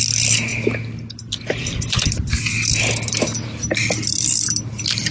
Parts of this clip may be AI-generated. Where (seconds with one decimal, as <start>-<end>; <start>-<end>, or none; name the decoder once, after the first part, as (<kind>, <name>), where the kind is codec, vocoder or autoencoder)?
none